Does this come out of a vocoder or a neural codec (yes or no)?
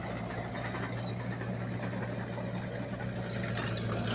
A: no